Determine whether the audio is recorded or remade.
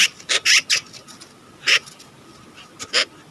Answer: recorded